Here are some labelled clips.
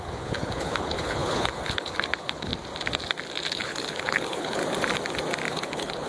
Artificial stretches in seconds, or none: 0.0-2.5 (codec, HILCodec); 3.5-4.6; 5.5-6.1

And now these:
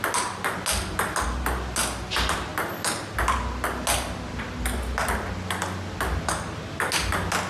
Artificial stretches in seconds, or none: none